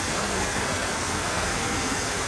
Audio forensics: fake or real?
fake